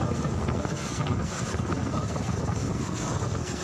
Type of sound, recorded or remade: remade